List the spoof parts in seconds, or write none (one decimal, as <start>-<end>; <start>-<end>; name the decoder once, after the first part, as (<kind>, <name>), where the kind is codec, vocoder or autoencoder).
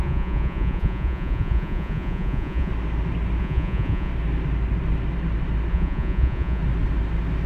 0.0-2.7 (vocoder, Vocos); 3.4-4.1; 5.7-6.6